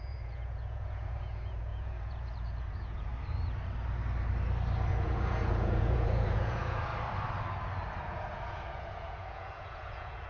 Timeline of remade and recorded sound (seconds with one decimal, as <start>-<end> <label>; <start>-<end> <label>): 0.0-3.1 remade; 3.1-4.9 recorded; 4.9-6.9 remade; 6.9-8.0 recorded; 8.0-10.3 remade